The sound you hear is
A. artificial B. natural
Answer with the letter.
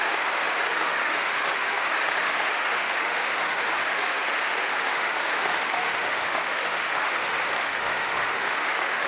A